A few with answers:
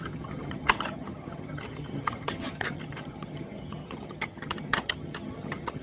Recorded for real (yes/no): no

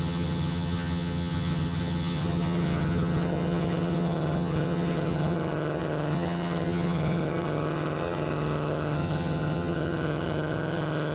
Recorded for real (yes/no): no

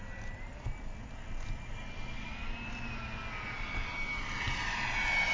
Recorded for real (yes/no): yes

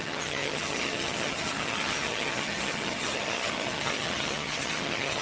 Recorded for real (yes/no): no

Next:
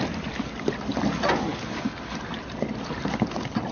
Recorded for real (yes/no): yes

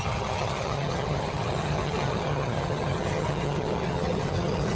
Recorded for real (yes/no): no